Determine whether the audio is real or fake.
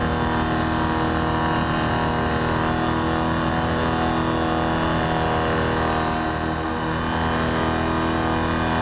real